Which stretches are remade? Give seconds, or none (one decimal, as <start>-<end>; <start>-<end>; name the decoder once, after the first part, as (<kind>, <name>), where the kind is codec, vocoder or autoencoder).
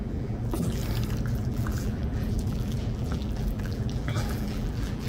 0.0-0.8 (vocoder, BigVGAN v2); 1.3-5.1